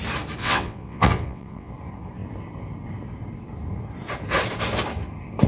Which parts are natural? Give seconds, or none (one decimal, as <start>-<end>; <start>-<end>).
0.0-0.4; 1.7-5.5